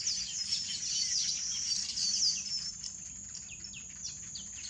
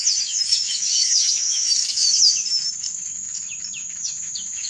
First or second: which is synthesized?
second